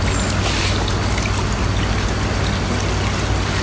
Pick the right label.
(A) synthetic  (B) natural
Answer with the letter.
B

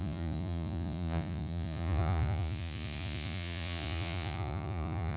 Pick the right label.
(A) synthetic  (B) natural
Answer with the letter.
A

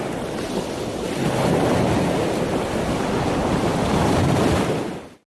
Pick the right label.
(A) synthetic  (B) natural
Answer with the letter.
B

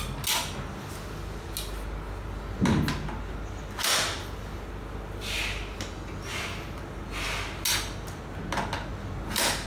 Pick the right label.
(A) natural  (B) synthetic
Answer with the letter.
A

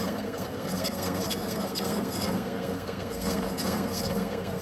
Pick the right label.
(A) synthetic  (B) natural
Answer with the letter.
A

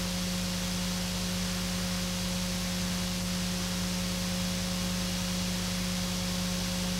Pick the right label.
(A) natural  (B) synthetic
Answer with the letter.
A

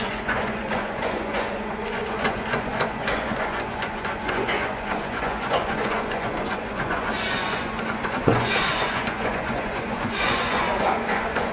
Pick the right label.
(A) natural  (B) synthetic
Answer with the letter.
B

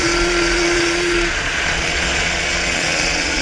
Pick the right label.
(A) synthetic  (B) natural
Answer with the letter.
A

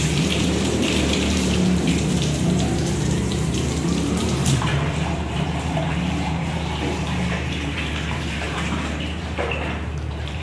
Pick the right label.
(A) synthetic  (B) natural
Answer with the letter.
A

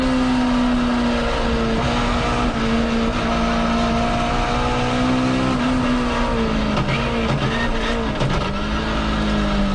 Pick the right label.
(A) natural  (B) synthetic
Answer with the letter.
A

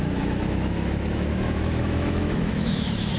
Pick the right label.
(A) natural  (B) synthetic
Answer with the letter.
B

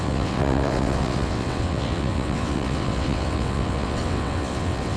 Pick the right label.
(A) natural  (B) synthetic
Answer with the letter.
B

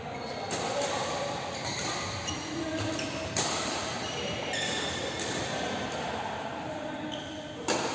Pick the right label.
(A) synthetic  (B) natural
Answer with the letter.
B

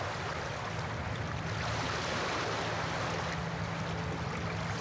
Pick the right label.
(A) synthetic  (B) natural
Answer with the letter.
B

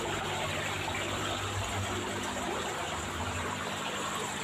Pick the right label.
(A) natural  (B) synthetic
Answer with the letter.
A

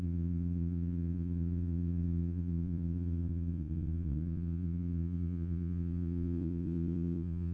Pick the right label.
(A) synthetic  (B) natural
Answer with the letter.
A